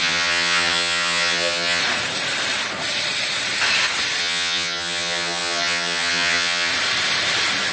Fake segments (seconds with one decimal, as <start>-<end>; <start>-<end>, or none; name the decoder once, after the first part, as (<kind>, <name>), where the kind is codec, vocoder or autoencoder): 0.0-1.8 (vocoder, HiFi-GAN); 4.2-6.7